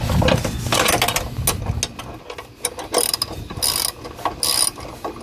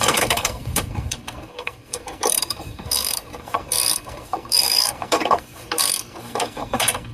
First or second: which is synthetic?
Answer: second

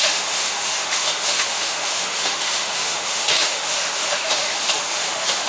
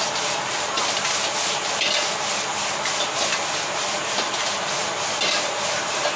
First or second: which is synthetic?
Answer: first